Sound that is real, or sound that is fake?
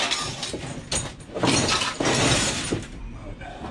real